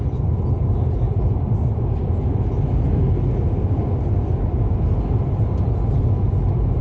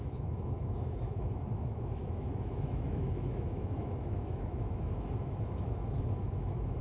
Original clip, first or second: first